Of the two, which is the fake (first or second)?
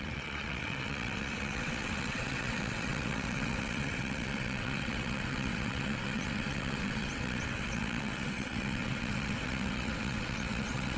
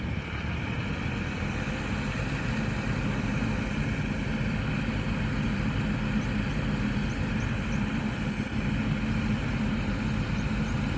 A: first